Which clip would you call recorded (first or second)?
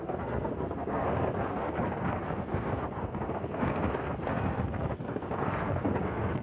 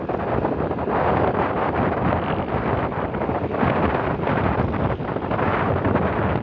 second